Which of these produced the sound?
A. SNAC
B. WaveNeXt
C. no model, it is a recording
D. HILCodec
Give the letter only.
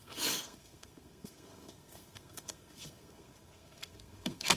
A